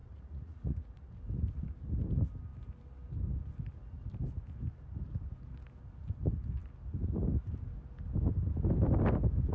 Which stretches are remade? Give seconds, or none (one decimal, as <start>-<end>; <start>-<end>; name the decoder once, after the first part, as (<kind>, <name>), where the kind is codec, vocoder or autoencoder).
0.0-1.2 (vocoder, Vocos)